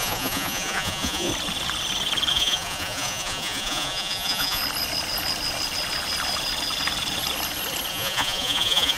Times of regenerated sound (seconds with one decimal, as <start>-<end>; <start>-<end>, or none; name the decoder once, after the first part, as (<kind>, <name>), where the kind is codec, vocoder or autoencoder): 0.0-1.3 (vocoder, Vocos); 2.3-4.6; 7.9-9.0